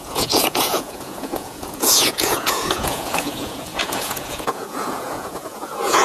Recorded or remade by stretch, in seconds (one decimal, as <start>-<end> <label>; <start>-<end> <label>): 0.0-6.0 remade